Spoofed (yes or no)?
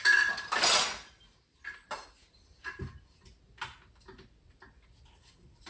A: no